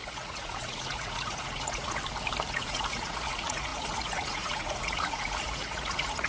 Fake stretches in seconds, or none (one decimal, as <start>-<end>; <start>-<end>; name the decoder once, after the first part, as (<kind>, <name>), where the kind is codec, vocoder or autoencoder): 0.0-2.0 (vocoder, Vocos); 2.5-6.3

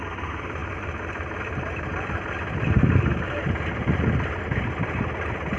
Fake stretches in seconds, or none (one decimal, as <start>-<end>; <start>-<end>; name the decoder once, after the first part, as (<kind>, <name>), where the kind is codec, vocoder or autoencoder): 0.6-1.8 (vocoder, BigVGAN v2)

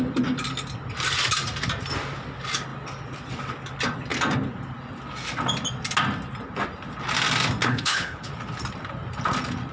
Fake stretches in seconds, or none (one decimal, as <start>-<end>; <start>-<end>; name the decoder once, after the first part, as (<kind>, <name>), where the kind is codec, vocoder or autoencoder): 7.6-8.3 (codec, HILCodec)

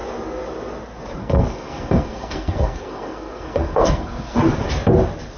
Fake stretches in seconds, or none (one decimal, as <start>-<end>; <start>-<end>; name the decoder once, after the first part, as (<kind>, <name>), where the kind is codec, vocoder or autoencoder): 1.2-4.4 (codec, SNAC)

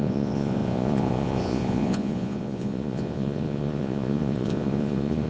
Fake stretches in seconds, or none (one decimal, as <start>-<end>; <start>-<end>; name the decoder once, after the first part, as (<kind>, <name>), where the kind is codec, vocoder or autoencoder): 0.0-5.3 (vocoder, Vocos)

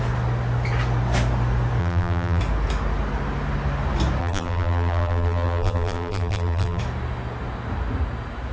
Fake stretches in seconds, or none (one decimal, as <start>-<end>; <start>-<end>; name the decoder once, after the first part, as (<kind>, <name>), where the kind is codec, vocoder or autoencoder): 1.8-2.4 (vocoder, BigVGAN v2); 4.2-6.8